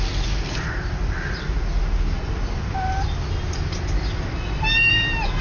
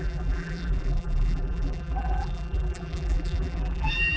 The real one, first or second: first